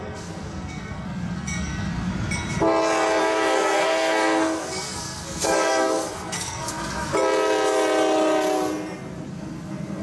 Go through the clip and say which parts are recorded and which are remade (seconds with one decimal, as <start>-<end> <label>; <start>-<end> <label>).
0.0-2.1 remade; 2.1-3.2 recorded; 3.2-7.1 remade; 7.1-9.3 recorded; 9.3-10.0 remade